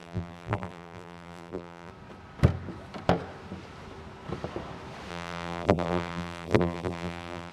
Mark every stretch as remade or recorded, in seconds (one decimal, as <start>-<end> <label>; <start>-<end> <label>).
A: 0.0-1.9 remade; 1.9-5.1 recorded; 5.1-7.5 remade